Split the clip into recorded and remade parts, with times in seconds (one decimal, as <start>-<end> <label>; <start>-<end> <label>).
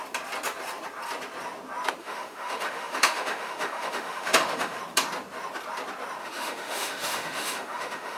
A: 0.0-2.0 recorded; 2.0-4.8 remade; 4.8-6.2 recorded; 6.2-8.2 remade